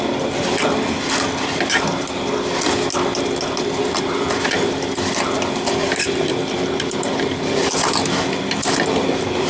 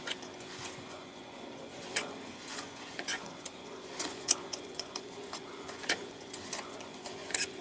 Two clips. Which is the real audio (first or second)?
first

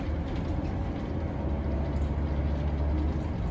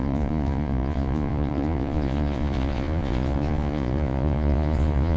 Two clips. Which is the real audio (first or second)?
first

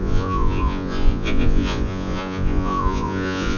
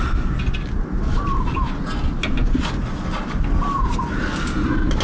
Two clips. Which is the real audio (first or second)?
second